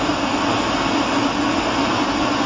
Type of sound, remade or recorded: recorded